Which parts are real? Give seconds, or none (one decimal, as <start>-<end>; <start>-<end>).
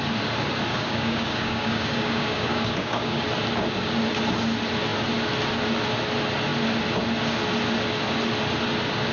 0.0-0.7; 3.2-9.1